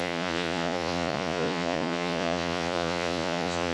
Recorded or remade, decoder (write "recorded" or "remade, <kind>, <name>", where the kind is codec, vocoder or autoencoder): remade, vocoder, Vocos